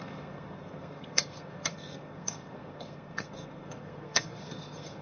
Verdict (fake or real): fake